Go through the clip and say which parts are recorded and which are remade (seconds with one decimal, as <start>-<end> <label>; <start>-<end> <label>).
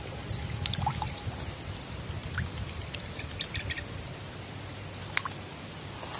0.0-6.2 recorded